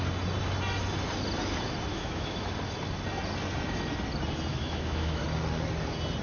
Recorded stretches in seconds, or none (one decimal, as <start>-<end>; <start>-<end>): 0.0-1.9; 2.5-4.5; 5.2-6.2